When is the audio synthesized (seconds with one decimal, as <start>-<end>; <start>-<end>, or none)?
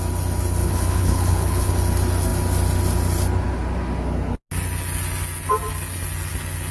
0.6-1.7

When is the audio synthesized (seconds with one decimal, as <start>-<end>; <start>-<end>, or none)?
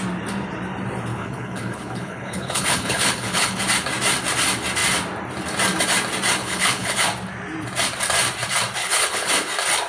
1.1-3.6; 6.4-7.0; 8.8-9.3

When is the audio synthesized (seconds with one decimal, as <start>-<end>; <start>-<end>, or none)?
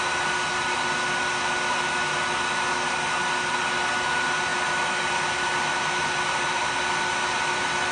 none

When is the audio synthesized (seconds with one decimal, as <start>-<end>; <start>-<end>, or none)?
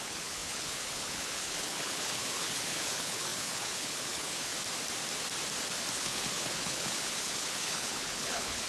0.0-4.5; 5.9-8.7